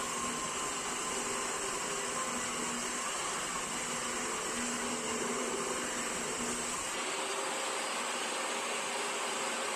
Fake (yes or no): no